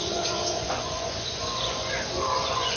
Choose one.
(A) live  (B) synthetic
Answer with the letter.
B